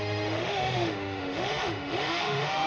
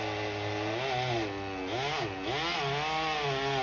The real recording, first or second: second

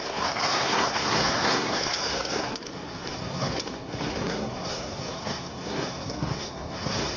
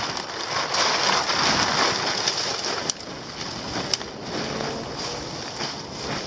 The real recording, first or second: second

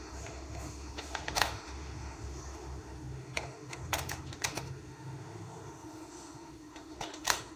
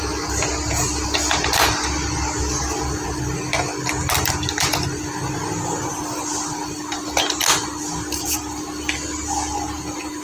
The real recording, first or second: second